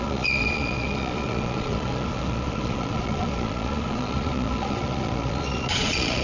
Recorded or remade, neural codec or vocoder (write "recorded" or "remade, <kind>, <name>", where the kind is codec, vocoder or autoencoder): remade, vocoder, Vocos